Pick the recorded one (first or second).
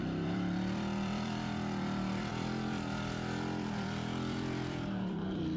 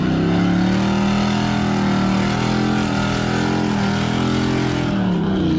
second